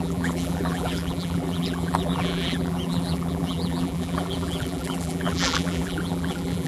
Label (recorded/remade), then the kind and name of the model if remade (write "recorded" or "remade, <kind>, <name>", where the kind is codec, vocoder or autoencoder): remade, vocoder, BigVGAN v2